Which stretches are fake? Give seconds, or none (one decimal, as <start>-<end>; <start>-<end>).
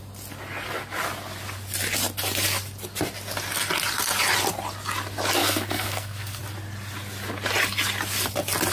5.4-6.4